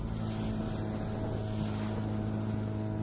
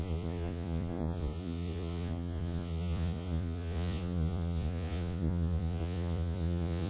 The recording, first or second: first